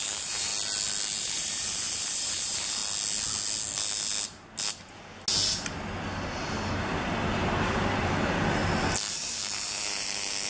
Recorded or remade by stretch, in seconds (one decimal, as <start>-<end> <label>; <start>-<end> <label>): 0.0-0.5 remade; 0.5-1.2 recorded; 1.2-2.8 remade; 2.8-6.5 recorded; 6.5-8.6 remade; 8.6-9.1 recorded; 9.1-10.5 remade

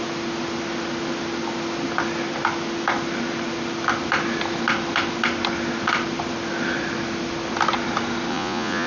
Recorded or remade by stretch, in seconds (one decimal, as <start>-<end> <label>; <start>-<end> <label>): 0.0-8.3 recorded; 8.3-8.9 remade

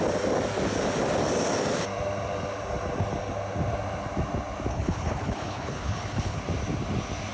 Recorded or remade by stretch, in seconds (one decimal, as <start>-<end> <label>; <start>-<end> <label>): 0.0-4.7 recorded; 4.7-6.4 remade; 6.4-7.3 recorded

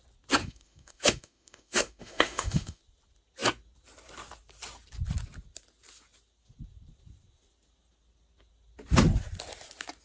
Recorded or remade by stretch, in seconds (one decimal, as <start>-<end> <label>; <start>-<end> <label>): 0.0-0.4 recorded; 0.4-2.8 remade; 2.8-10.0 recorded